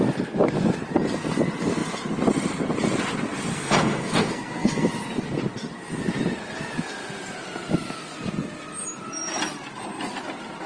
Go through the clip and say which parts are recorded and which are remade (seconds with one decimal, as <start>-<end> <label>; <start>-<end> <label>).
0.0-3.5 recorded; 3.5-4.9 remade; 4.9-10.7 recorded